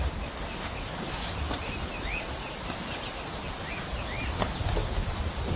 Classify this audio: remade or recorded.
recorded